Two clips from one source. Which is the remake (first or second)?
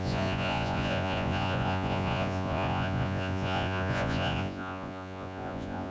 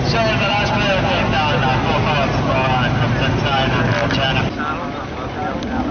first